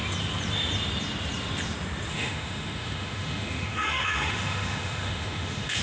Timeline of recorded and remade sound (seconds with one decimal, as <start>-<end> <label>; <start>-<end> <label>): 0.0-2.1 recorded; 2.1-5.8 remade